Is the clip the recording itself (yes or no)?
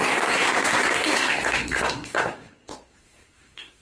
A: no